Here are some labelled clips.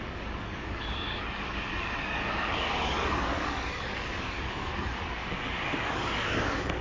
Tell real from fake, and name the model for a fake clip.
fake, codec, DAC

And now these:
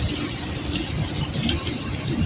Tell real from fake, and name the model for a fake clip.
fake, vocoder, BigVGAN v2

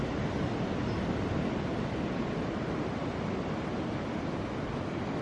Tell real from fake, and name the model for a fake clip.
real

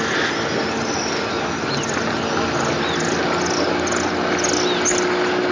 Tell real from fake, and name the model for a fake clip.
real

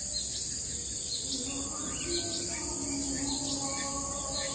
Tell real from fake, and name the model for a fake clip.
real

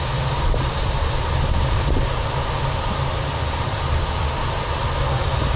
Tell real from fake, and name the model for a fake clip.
real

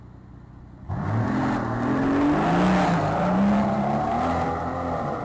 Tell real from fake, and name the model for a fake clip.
real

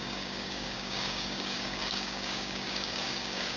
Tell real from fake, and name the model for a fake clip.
fake, codec, DAC